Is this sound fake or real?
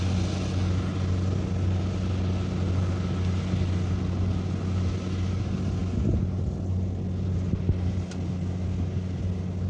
real